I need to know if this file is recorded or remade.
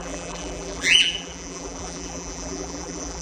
remade